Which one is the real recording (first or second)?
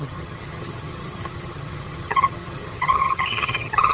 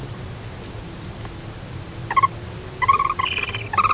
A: second